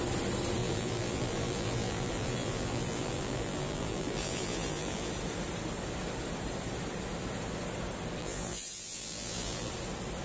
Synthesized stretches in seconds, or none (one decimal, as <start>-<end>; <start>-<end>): 0.6-5.1; 8.2-9.7